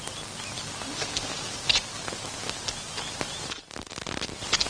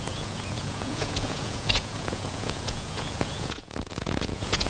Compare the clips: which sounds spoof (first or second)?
second